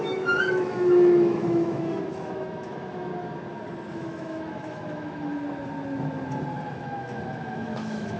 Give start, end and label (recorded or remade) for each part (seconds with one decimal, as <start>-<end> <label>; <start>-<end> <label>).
0.0-3.1 remade; 3.1-3.9 recorded; 3.9-5.3 remade; 5.3-6.7 recorded; 6.7-8.2 remade